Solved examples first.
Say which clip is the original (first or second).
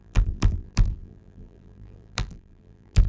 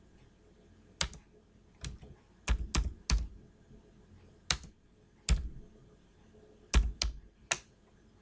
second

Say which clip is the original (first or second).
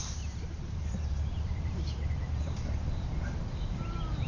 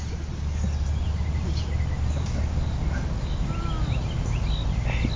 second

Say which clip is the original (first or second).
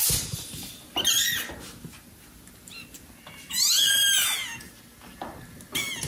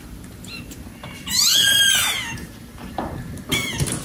first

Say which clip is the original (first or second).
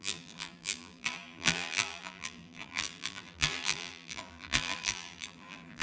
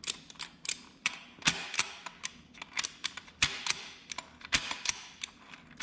second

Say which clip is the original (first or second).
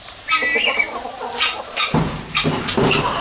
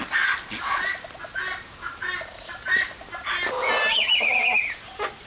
second